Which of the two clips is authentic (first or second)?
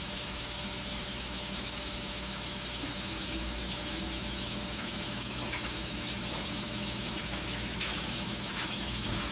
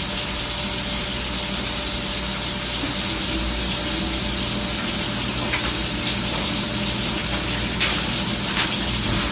second